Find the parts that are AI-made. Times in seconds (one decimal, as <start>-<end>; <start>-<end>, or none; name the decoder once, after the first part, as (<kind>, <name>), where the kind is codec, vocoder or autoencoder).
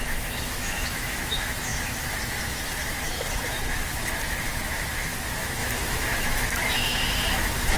0.0-7.8 (autoencoder, DAC-VAE)